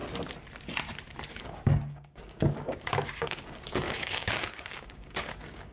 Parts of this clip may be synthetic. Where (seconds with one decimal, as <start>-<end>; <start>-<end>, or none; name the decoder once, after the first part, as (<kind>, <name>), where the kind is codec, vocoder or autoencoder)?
1.3-5.7 (codec, DAC)